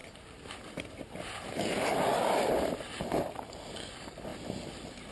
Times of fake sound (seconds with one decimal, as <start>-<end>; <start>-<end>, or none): 0.0-2.5